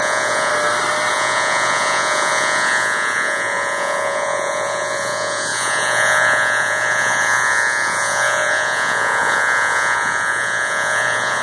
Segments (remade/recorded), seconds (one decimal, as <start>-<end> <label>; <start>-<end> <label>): 0.0-0.5 remade; 0.5-1.1 recorded; 1.1-11.4 remade